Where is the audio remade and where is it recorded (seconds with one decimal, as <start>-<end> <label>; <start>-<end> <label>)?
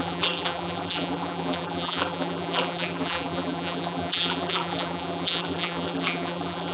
0.0-6.7 remade